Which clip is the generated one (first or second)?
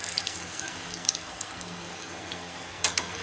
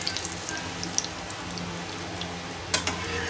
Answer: first